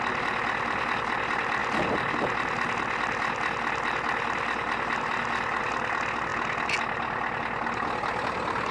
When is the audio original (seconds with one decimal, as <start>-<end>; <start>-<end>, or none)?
0.0-8.7